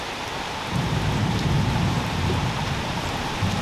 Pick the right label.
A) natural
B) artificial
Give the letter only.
B